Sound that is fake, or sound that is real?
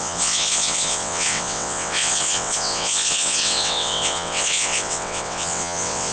fake